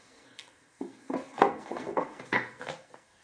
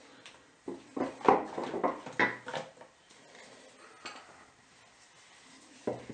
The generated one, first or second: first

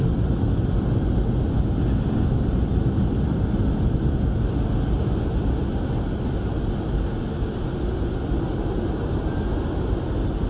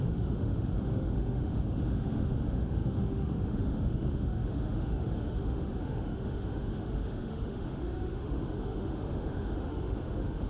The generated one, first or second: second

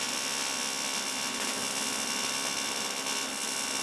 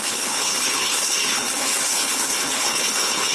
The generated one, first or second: second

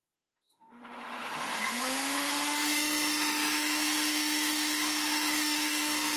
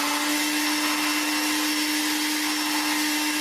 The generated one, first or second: first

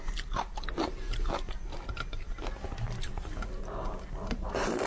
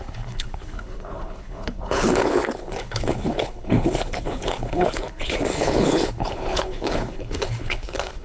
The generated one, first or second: second